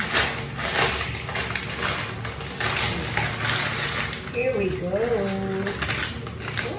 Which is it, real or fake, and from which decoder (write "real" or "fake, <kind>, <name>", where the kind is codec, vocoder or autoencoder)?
real